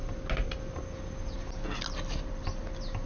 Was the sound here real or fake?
real